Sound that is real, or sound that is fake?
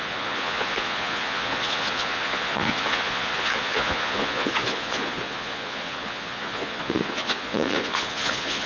fake